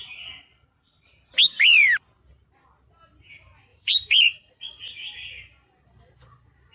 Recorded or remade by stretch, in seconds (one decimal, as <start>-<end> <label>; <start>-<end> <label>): 0.0-3.7 recorded; 3.7-4.5 remade; 4.5-6.7 recorded

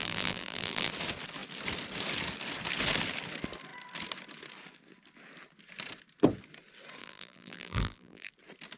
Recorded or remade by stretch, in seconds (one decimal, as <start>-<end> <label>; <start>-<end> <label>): 0.0-0.9 remade; 0.9-7.0 recorded; 7.0-8.3 remade; 8.3-8.8 recorded

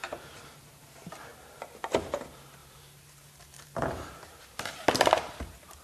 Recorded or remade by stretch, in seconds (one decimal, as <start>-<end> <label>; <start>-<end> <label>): 0.0-0.9 remade; 0.9-1.3 recorded; 1.3-2.0 remade; 2.0-2.6 recorded; 2.6-4.9 remade; 4.9-5.8 recorded